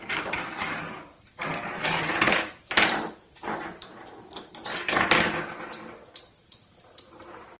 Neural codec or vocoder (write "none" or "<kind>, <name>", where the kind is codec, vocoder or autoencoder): vocoder, BigVGAN v2